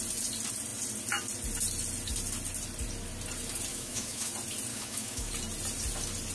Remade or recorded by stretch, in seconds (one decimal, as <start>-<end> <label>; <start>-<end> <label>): 0.0-3.7 recorded; 3.7-4.3 remade; 4.3-4.7 recorded; 4.7-5.3 remade; 5.3-6.3 recorded